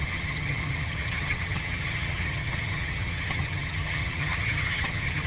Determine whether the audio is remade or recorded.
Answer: remade